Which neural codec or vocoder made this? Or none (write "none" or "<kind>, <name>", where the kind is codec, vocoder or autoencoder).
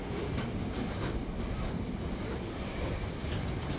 none